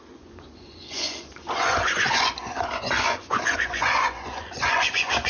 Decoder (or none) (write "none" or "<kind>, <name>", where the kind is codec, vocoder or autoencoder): vocoder, Vocos